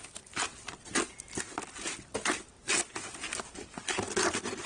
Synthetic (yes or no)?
no